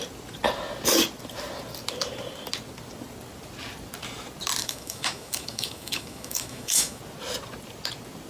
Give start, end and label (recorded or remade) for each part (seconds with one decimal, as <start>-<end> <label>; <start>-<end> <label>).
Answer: 0.0-4.6 recorded; 4.6-7.0 remade; 7.0-8.3 recorded